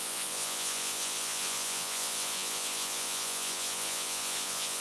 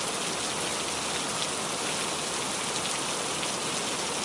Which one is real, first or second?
second